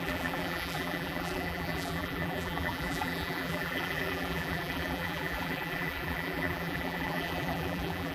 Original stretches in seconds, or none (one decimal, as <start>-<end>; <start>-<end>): none